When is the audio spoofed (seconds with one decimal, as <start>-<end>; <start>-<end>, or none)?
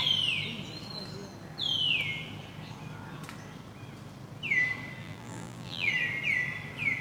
5.0-5.9